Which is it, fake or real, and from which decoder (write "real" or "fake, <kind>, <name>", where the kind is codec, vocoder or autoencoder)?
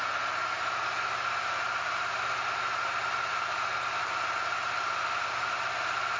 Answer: real